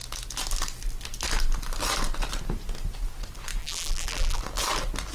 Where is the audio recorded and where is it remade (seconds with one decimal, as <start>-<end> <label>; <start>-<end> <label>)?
0.0-3.6 recorded; 3.6-4.4 remade; 4.4-5.1 recorded